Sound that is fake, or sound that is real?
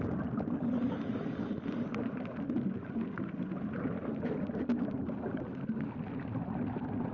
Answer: real